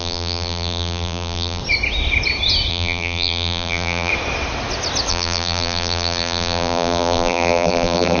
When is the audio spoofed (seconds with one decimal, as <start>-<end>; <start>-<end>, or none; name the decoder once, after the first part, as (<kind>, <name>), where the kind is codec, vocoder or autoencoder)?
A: 0.0-1.6 (vocoder, BigVGAN v2); 2.7-4.1; 5.1-8.2